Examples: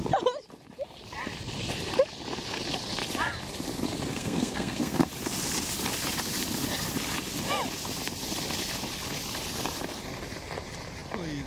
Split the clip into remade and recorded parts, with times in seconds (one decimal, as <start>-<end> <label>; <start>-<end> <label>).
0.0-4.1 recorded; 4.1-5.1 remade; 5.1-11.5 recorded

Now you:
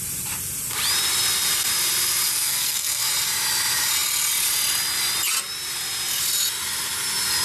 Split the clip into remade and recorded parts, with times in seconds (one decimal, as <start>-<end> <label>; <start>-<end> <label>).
0.0-2.3 recorded; 2.3-3.1 remade; 3.1-7.4 recorded

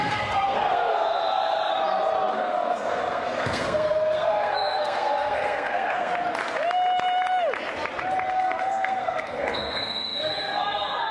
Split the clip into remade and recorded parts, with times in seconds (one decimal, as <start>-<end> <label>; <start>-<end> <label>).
0.0-1.7 remade; 1.7-2.3 recorded; 2.3-6.1 remade; 6.1-8.3 recorded; 8.3-11.1 remade